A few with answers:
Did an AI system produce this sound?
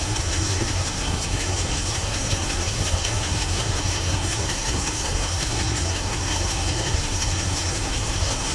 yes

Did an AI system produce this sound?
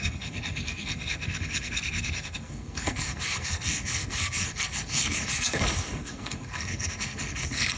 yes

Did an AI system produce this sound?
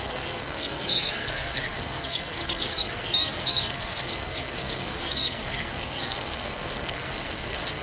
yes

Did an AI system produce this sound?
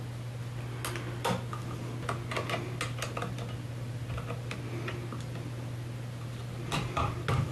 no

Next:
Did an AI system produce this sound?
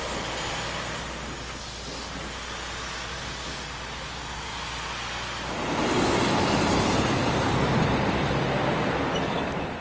no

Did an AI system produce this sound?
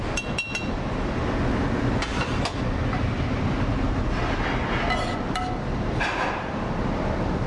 no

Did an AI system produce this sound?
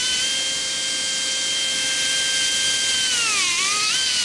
no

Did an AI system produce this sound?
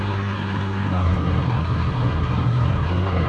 yes